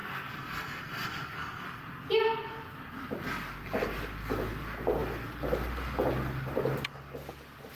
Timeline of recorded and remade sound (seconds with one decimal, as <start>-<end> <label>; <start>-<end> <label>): 0.0-1.8 remade; 1.8-7.8 recorded